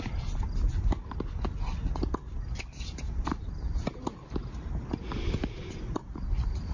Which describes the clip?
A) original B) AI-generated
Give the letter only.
A